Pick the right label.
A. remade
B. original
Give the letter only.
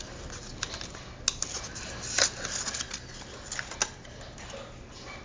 B